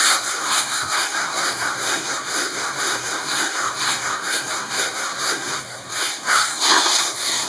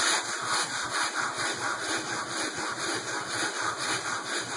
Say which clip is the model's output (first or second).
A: first